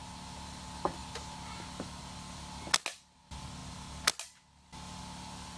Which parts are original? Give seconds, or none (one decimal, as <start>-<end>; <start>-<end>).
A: 0.0-5.6